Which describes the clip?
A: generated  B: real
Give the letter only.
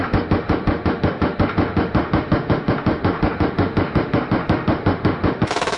A